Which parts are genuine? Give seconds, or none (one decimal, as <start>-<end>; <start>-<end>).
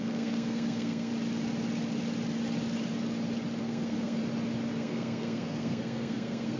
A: 1.1-3.6; 4.2-4.7